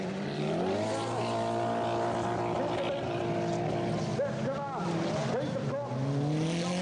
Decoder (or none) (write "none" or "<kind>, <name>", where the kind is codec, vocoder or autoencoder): none